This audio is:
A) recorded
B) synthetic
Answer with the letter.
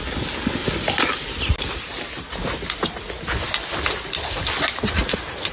A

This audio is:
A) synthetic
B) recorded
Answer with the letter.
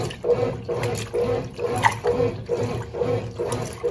B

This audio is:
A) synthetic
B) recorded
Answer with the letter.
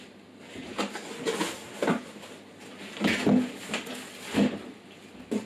B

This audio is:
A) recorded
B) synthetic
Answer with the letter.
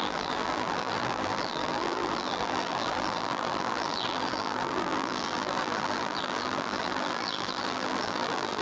B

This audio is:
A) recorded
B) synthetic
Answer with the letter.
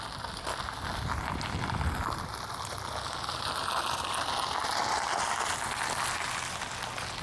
A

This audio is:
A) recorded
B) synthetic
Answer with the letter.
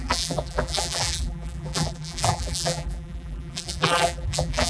B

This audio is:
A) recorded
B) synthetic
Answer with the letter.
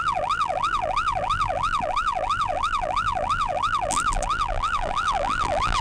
B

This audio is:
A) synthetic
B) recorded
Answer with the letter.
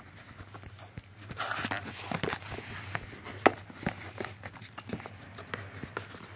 B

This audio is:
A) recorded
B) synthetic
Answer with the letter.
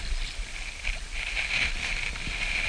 A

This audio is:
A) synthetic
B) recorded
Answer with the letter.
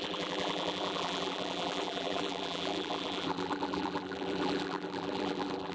A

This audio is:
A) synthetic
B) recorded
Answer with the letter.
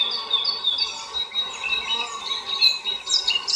B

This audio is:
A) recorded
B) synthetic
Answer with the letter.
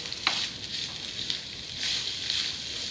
A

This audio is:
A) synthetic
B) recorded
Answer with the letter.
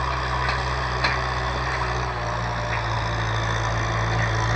B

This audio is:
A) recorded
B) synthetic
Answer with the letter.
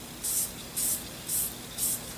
A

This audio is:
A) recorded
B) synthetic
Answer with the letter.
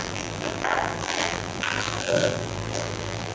B